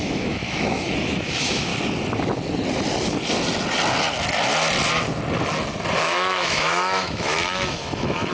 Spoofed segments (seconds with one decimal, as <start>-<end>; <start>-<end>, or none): 0.0-1.7; 6.0-8.3